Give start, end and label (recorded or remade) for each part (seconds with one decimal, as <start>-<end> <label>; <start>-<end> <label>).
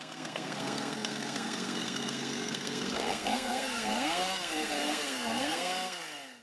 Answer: 0.0-6.4 remade